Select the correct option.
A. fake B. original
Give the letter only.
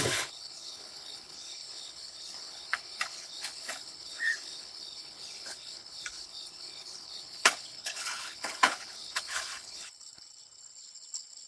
A